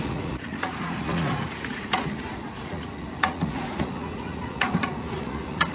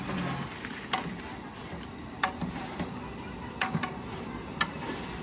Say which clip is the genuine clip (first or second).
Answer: second